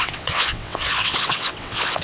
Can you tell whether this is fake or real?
fake